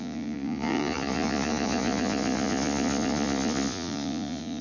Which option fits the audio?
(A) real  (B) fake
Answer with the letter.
B